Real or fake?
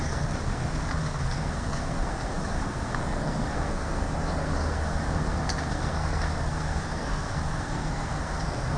fake